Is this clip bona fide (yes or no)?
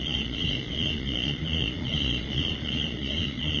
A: no